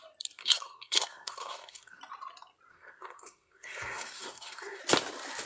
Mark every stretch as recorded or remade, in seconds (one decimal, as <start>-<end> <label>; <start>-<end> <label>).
0.0-0.4 recorded; 0.4-2.0 remade; 2.0-2.7 recorded; 2.7-4.8 remade; 4.8-5.5 recorded